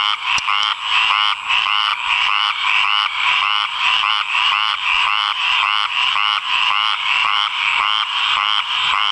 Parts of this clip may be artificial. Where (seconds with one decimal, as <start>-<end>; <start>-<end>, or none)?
0.0-0.7; 1.5-9.1